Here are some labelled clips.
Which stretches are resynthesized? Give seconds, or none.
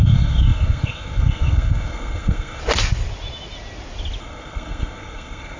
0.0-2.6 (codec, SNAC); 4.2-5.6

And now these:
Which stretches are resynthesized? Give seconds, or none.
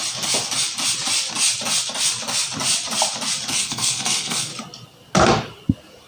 3.5-4.5 (codec, SNAC)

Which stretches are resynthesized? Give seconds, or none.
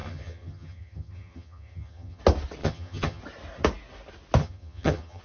0.0-2.2 (vocoder, HiFi-GAN); 2.6-3.2; 4.4-5.2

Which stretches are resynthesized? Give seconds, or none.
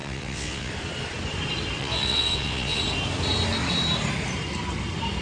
0.0-0.7 (vocoder, WaveNeXt); 1.8-2.8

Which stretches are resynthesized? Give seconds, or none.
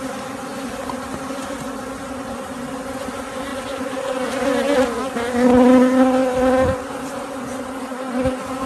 none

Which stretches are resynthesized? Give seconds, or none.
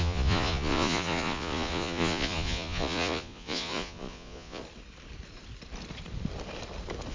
0.0-4.6 (vocoder, Vocos)